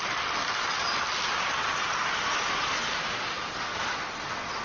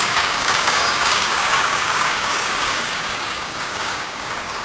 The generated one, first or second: second